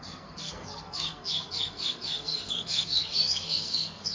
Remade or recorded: remade